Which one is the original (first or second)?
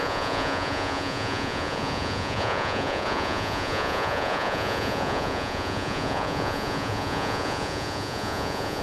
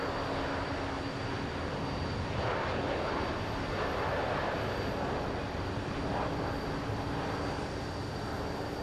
second